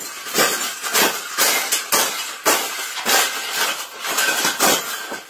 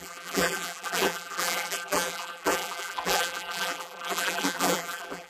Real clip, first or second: first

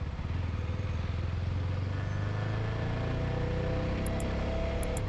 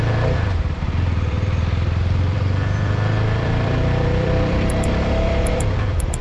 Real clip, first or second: first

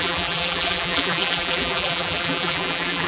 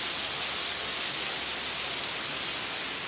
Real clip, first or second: second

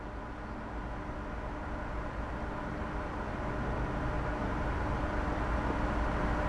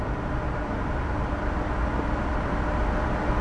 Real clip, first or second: first